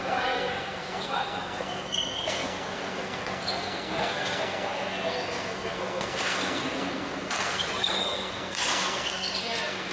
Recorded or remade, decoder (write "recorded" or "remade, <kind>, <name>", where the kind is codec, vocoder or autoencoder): remade, codec, SNAC